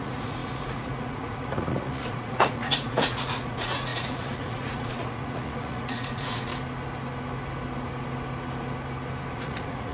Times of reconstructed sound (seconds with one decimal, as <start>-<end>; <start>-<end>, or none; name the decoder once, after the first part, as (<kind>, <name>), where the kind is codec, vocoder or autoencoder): 0.0-6.5 (vocoder, Vocos); 9.3-9.9